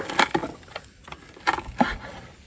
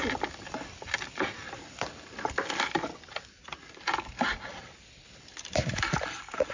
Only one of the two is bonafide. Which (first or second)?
first